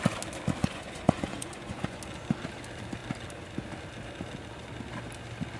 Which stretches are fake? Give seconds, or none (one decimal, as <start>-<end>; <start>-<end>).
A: 0.6-2.0